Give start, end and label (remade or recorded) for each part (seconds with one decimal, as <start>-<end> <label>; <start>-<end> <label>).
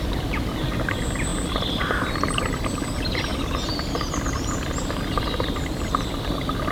0.0-6.7 recorded